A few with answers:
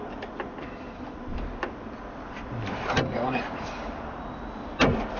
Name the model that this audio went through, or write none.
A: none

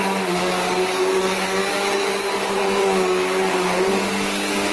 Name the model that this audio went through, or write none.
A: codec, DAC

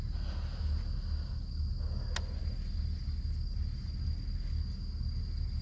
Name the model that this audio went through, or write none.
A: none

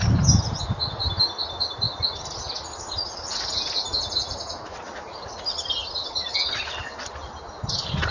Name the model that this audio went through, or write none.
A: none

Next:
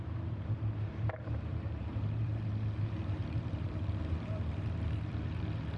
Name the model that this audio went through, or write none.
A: vocoder, BigVGAN v2